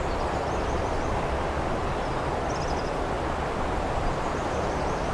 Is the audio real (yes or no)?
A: yes